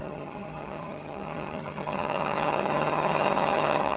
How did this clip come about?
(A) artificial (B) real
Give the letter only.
A